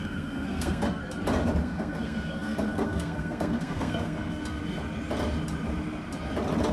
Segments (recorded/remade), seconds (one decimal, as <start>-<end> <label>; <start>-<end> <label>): 0.0-1.0 remade; 1.0-1.6 recorded; 1.6-4.6 remade; 4.6-6.7 recorded

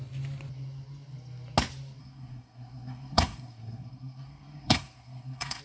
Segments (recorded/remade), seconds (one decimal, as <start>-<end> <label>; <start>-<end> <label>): 0.0-2.0 recorded; 2.0-5.6 remade